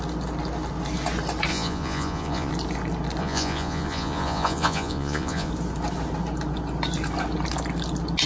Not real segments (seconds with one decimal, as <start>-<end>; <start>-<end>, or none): 1.5-2.5; 3.2-5.5